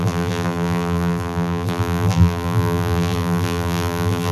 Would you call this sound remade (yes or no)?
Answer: yes